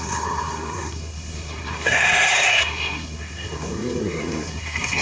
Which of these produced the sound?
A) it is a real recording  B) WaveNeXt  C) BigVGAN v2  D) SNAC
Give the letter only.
D